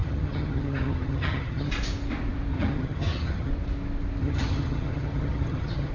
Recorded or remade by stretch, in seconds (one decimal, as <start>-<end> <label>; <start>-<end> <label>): 0.0-1.7 remade; 1.7-2.5 recorded; 2.5-3.5 remade; 3.5-4.2 recorded; 4.2-5.9 remade